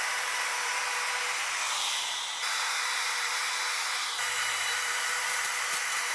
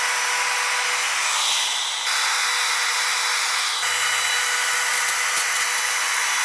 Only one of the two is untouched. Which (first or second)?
second